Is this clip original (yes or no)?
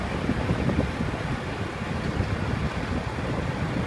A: yes